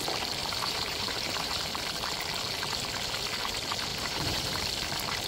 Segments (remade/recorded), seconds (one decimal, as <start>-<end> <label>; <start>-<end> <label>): 0.0-0.4 recorded; 0.4-1.7 remade; 1.7-3.9 recorded; 3.9-4.6 remade; 4.6-5.3 recorded